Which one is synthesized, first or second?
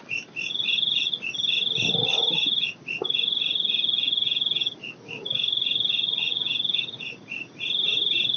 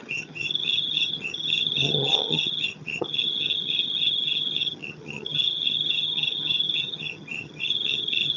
second